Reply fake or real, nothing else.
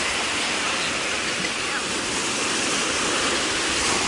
real